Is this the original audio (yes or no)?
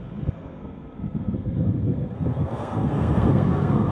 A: no